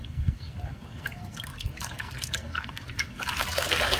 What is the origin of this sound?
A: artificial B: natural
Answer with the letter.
A